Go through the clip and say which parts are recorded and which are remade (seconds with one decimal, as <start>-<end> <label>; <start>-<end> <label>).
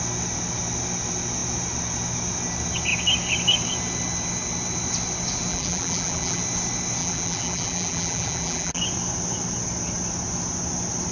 0.0-5.5 recorded; 5.5-6.4 remade; 6.4-7.0 recorded; 7.0-8.8 remade; 8.8-11.1 recorded